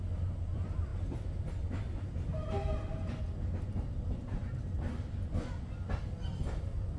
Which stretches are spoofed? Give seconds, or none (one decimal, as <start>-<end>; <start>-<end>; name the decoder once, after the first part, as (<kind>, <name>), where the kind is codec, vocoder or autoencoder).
none